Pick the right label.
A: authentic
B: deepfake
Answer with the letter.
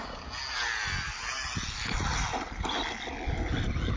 A